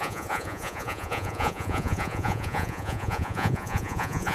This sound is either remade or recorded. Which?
remade